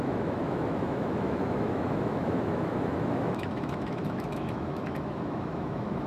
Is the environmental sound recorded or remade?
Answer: remade